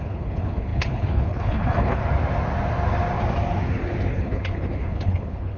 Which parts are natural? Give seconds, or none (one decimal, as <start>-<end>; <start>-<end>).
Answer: 2.0-4.1

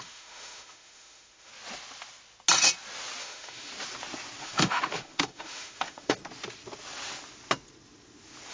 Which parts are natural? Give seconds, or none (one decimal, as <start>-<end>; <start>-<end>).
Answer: 1.5-3.2; 3.7-4.4; 6.2-8.5

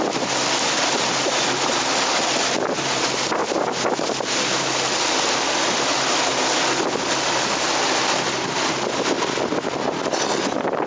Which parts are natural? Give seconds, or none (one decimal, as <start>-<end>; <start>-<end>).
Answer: 0.0-10.9

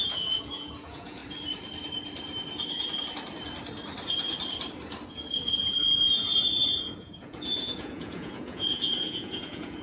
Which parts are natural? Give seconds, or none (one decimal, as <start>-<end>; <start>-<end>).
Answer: 1.2-5.1

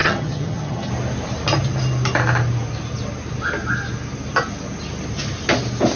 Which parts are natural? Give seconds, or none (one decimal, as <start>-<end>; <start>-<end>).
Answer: 0.9-6.0

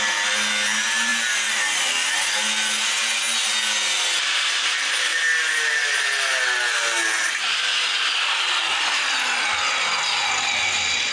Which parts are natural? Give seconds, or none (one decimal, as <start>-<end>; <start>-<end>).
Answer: 0.0-11.1